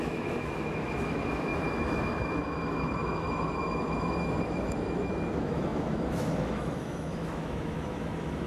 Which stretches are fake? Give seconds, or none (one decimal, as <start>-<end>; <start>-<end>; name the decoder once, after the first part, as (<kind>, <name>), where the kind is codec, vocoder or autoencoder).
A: 0.0-8.5 (autoencoder, DAC-VAE)